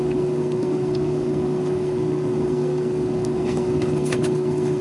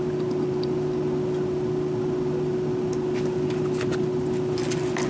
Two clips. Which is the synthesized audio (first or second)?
first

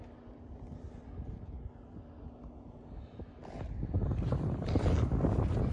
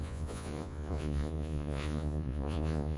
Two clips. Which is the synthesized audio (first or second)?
second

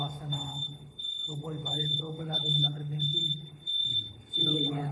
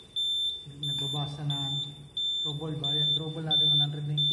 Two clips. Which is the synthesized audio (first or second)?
first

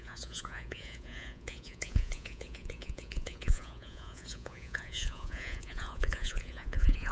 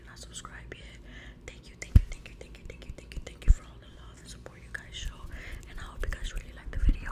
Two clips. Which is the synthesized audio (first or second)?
first